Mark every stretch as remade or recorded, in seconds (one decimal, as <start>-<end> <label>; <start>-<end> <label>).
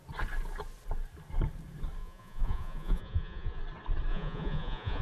0.0-2.0 recorded; 2.0-3.6 remade; 3.6-4.1 recorded; 4.1-5.0 remade